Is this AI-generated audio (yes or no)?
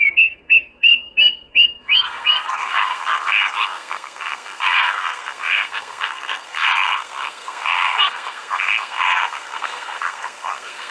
yes